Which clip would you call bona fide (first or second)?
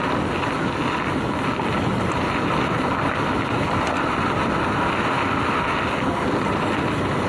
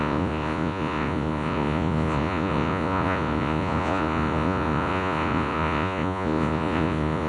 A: first